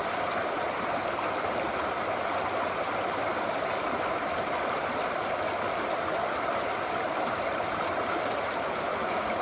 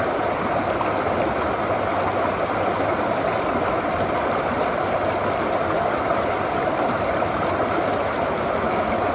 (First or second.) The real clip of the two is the second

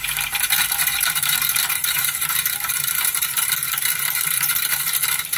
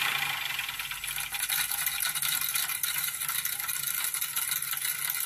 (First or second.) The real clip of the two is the second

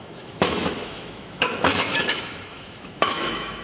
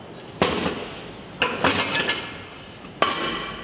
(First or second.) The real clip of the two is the second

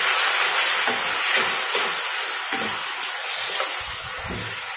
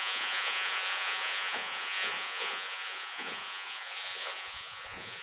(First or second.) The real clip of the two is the first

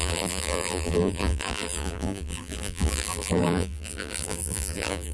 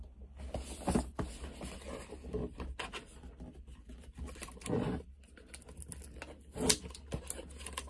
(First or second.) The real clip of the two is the second